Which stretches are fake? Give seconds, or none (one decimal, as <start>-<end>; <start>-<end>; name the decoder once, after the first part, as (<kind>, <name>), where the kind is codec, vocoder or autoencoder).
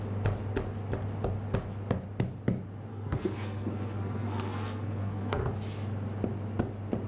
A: 2.9-5.4 (codec, SNAC)